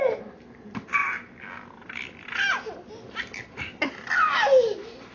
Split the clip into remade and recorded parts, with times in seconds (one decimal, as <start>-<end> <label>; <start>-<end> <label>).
0.0-5.1 recorded